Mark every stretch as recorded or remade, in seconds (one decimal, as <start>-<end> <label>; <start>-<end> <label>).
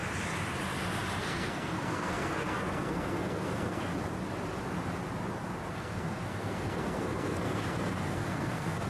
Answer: 0.0-1.2 recorded; 1.2-3.9 remade; 3.9-5.7 recorded; 5.7-8.9 remade